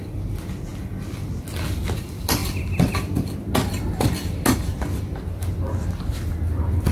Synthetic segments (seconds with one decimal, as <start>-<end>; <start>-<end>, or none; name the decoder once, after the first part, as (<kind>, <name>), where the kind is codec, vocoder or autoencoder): none

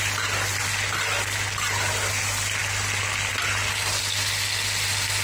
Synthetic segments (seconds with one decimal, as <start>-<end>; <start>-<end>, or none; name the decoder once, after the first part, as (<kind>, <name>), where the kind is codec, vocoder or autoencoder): none

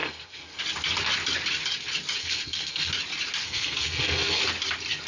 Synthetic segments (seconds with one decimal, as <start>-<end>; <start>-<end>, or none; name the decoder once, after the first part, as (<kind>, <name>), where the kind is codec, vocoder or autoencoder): 0.0-0.6 (codec, SNAC); 2.2-2.9; 3.4-4.4